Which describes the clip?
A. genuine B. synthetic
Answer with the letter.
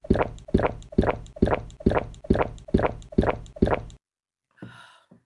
A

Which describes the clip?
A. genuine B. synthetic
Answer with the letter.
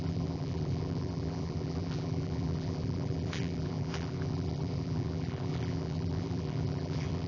B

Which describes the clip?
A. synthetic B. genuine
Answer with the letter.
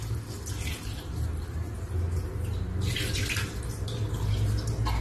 B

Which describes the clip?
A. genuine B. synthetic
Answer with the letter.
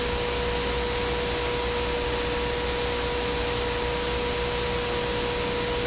A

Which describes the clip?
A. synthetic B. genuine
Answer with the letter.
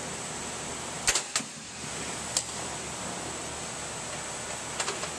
B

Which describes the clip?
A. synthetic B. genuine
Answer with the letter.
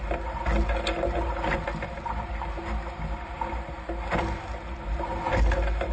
B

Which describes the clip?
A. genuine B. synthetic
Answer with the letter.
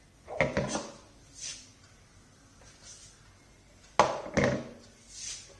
A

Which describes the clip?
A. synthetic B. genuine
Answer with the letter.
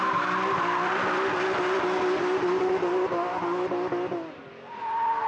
A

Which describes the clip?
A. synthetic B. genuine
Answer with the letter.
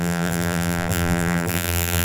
A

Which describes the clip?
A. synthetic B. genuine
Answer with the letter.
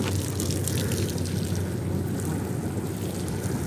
B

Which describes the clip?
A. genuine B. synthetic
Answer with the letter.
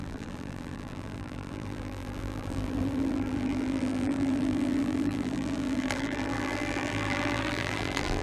B